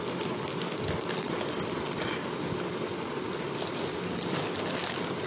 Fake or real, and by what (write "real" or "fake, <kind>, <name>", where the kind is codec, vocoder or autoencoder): real